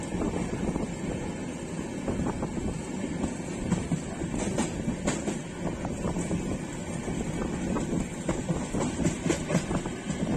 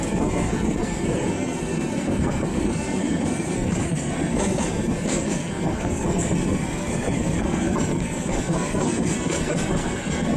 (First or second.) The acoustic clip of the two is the first